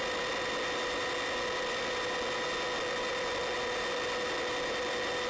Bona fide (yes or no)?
yes